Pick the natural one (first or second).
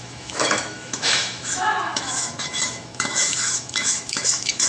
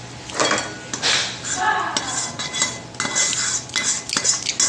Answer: second